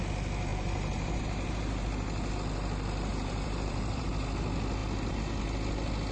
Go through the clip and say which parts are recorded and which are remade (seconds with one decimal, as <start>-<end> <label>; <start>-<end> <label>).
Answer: 0.0-0.5 recorded; 0.5-1.8 remade; 1.8-3.1 recorded; 3.1-4.1 remade; 4.1-6.1 recorded